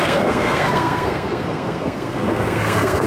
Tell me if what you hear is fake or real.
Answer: fake